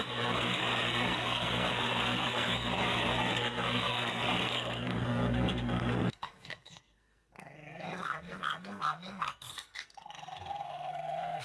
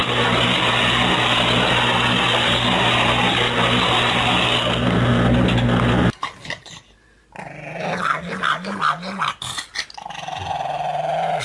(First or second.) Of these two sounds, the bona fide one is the second